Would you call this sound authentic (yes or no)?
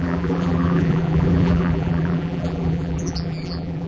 no